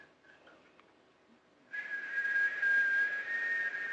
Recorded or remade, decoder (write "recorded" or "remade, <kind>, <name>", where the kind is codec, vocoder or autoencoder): recorded